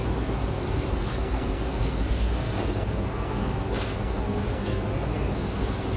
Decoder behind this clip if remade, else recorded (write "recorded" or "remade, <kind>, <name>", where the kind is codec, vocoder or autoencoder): remade, codec, SNAC